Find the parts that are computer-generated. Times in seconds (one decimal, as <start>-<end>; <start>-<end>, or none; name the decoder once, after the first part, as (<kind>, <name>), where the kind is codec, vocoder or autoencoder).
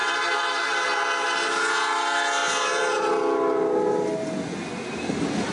0.0-0.6 (vocoder, BigVGAN v2); 2.4-3.1